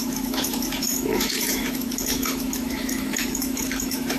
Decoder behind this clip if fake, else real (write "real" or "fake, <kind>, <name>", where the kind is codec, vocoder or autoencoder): fake, autoencoder, DAC-VAE